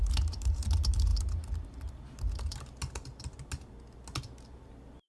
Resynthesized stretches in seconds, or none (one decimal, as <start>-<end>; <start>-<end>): none